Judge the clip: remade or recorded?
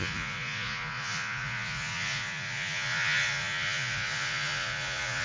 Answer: remade